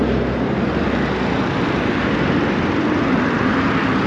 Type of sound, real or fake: real